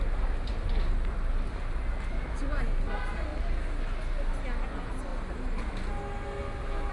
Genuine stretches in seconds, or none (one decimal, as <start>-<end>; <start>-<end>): 0.0-6.9